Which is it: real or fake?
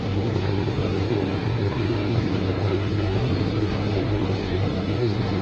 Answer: fake